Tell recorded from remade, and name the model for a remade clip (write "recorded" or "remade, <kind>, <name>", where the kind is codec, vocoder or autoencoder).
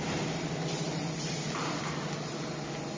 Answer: recorded